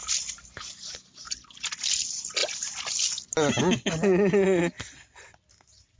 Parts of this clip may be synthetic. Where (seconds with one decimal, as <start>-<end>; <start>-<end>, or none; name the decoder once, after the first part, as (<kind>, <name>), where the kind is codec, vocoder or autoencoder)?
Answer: none